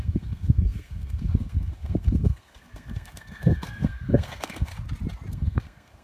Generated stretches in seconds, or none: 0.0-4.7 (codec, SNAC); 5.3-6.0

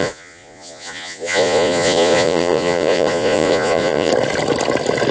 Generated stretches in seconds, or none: 0.0-4.1 (vocoder, Vocos)